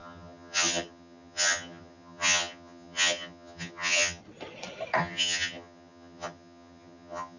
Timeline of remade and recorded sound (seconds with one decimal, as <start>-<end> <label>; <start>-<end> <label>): 0.0-4.2 remade; 4.2-5.0 recorded; 5.0-7.4 remade